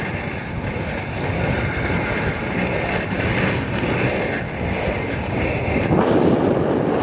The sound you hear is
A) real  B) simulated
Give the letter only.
A